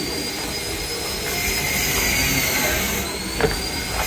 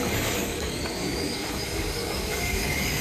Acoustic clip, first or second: first